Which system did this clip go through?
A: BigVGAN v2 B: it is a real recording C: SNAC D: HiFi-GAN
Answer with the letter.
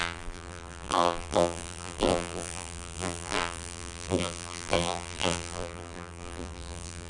A